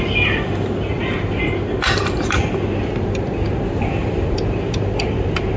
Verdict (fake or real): real